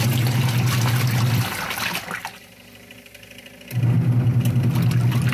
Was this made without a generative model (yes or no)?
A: yes